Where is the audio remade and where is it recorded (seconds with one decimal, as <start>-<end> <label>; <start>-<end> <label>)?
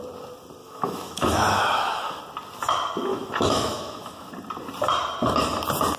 0.0-0.6 recorded; 0.6-2.2 remade; 2.2-3.1 recorded; 3.1-4.3 remade; 4.3-6.0 recorded